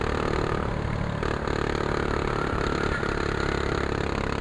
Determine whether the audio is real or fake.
real